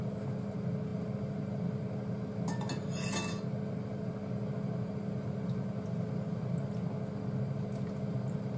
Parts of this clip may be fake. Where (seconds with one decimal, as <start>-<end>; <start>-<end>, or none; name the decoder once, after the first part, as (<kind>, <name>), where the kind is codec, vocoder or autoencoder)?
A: none